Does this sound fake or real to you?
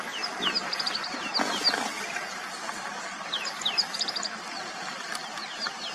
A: real